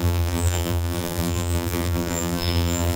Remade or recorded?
remade